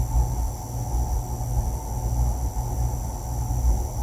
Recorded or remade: recorded